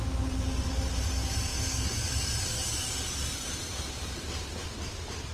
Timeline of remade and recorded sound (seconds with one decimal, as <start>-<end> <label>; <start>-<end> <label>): 0.0-5.3 recorded